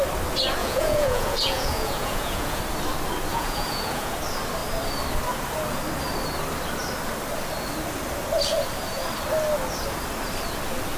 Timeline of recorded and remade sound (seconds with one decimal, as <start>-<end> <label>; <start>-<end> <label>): 0.0-0.6 recorded; 0.6-2.6 remade; 2.6-3.3 recorded; 3.3-4.1 remade; 4.1-11.0 recorded